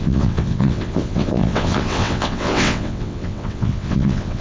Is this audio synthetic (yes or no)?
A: yes